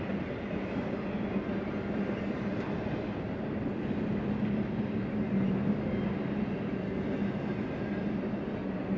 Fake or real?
real